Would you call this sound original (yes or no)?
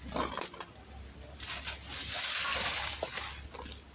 yes